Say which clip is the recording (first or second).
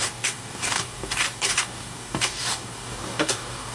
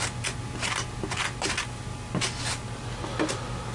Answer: second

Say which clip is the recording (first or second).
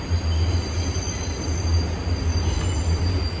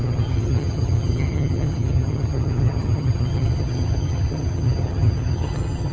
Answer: first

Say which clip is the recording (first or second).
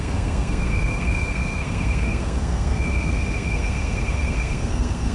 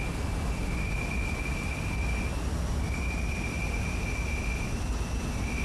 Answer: second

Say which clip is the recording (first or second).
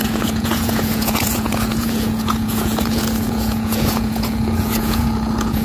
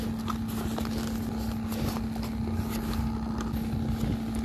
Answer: second